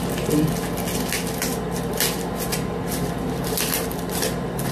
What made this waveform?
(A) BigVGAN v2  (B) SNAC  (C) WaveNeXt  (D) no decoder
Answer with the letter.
D